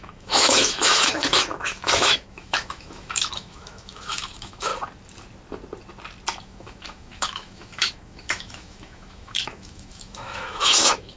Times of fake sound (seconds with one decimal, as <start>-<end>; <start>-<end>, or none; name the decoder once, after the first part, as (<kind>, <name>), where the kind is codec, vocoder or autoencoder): 0.0-4.7 (autoencoder, DAC-VAE); 6.4-11.2